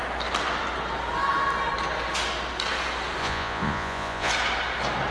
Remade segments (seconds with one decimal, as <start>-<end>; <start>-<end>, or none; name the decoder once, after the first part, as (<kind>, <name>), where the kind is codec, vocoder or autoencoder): 3.2-4.3 (vocoder, Vocos)